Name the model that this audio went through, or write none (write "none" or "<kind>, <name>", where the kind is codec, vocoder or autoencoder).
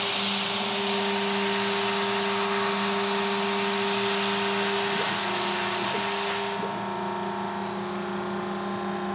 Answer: none